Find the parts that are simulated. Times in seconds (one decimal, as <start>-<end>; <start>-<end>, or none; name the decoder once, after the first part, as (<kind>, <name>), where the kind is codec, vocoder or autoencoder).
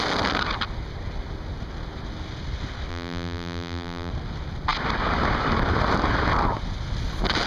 2.9-4.1 (vocoder, BigVGAN v2)